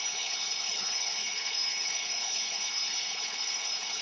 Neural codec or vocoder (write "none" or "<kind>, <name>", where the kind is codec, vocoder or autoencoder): codec, HILCodec